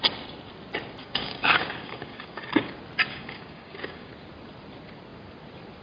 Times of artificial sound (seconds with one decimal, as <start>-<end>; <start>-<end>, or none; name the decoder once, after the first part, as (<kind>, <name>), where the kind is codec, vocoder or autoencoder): 1.0-2.7 (codec, DAC); 3.1-4.1

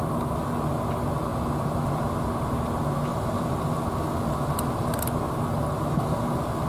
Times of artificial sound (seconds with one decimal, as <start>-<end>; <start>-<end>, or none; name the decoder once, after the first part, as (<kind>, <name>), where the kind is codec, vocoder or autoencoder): none

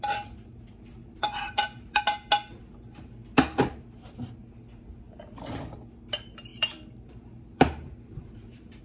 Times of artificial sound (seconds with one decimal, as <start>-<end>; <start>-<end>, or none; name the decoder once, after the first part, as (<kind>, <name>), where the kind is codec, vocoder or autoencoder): 1.0-2.0 (vocoder, BigVGAN v2); 6.5-8.8

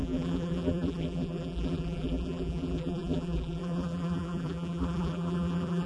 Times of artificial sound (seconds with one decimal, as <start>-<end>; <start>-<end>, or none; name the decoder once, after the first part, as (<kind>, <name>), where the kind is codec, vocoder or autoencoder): 0.0-5.9 (vocoder, BigVGAN v2)

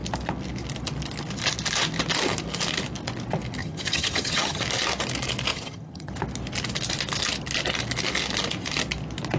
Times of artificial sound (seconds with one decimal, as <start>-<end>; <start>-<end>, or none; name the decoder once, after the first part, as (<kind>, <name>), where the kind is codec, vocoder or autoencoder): 3.6-4.6 (vocoder, HiFi-GAN); 5.5-6.1

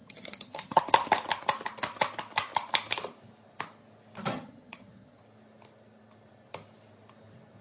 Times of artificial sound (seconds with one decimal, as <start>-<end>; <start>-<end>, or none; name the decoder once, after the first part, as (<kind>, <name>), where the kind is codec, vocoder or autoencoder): 0.0-0.8 (vocoder, HiFi-GAN); 4.3-5.2

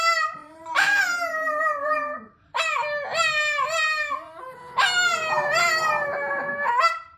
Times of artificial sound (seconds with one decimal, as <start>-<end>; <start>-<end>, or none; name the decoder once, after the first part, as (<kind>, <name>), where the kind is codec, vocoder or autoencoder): 0.4-2.6 (vocoder, BigVGAN v2); 5.1-5.6